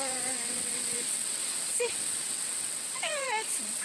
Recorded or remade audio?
remade